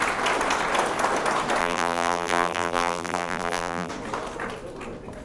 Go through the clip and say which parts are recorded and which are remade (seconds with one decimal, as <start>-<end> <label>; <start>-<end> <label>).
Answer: 0.0-1.6 recorded; 1.6-3.9 remade; 3.9-5.2 recorded